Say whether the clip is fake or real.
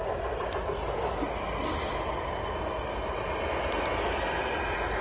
real